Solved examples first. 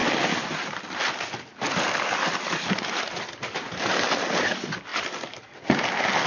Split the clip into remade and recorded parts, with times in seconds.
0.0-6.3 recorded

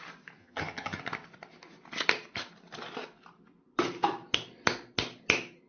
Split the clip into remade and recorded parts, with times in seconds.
0.0-0.4 recorded; 0.4-1.0 remade; 1.0-5.7 recorded

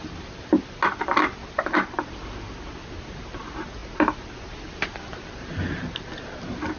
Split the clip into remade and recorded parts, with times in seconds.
0.0-6.8 recorded

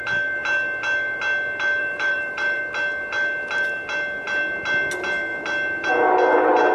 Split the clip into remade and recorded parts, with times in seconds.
0.0-1.8 recorded; 1.8-2.6 remade; 2.6-6.7 recorded

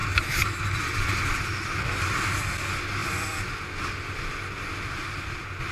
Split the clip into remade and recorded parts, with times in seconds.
0.0-5.7 recorded

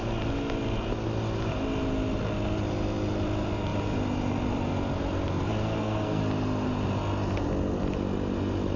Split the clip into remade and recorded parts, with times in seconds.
0.0-5.6 recorded; 5.6-6.2 remade; 6.2-8.8 recorded

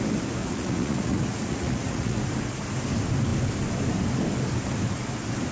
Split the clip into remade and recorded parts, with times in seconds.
0.0-0.4 recorded; 0.4-2.2 remade; 2.2-5.5 recorded